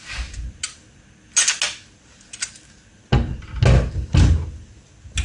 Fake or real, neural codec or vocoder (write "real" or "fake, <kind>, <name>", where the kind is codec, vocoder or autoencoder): real